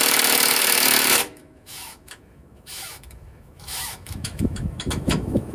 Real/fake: fake